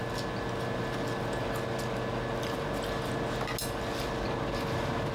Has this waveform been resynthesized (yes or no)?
no